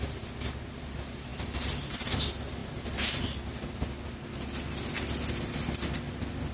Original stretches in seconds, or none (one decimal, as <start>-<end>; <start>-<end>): 2.6-4.1